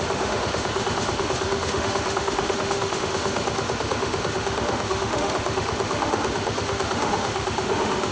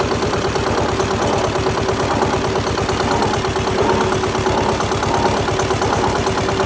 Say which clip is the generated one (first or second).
first